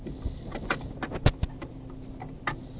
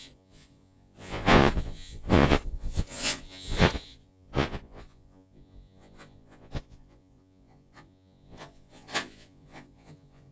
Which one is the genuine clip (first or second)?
first